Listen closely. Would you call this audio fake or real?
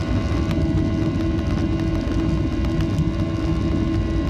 real